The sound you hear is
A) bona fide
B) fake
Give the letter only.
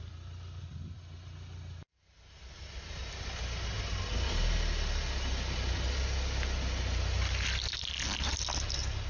A